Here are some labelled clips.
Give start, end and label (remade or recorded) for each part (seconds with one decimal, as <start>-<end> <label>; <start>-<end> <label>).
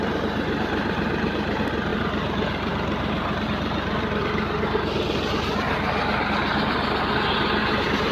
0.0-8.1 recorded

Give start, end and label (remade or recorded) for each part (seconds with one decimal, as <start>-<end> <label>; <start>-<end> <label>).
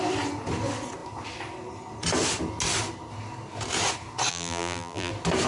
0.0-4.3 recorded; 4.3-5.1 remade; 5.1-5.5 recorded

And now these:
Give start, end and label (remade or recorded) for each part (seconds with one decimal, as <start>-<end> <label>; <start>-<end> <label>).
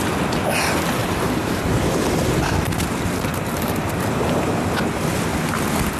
0.0-1.0 recorded; 1.0-2.1 remade; 2.1-3.3 recorded; 3.3-4.5 remade; 4.5-6.0 recorded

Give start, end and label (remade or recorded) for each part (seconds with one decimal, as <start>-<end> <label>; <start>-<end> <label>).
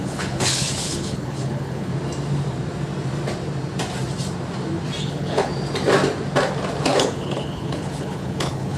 0.0-1.9 remade; 1.9-5.0 recorded; 5.0-5.5 remade; 5.5-6.8 recorded; 6.8-8.8 remade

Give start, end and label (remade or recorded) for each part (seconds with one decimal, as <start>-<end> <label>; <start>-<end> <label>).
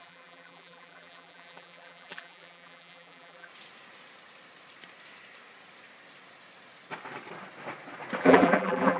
0.0-3.5 remade; 3.5-8.2 recorded; 8.2-9.0 remade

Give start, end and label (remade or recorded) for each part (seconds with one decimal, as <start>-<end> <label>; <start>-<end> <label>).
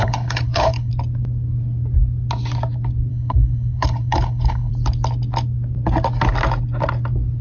0.0-0.9 remade; 0.9-3.1 recorded; 3.1-4.7 remade; 4.7-7.4 recorded